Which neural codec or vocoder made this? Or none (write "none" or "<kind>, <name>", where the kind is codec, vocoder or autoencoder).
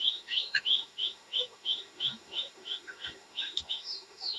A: autoencoder, DAC-VAE